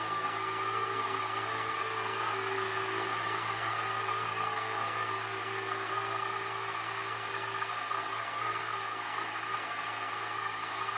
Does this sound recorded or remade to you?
remade